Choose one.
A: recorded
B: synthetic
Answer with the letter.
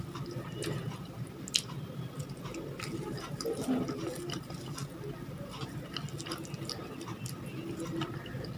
A